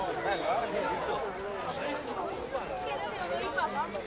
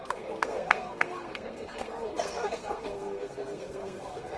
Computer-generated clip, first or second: second